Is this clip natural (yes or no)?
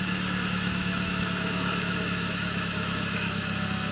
no